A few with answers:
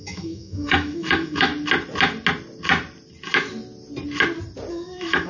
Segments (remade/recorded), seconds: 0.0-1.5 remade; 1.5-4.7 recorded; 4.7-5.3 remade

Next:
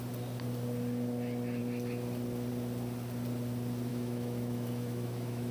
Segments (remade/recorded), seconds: 0.0-3.9 recorded; 3.9-5.5 remade